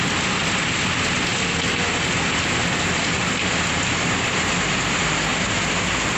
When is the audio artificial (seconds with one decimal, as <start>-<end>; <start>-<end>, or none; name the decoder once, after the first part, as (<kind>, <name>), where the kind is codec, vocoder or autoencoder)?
none